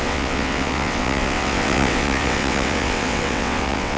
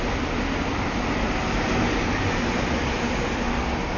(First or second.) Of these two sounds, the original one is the second